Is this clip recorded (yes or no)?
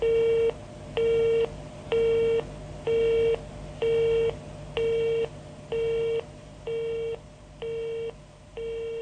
yes